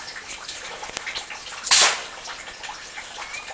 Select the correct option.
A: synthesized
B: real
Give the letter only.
B